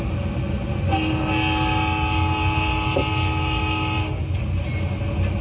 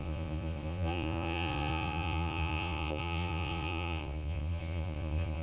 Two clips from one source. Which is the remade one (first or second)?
second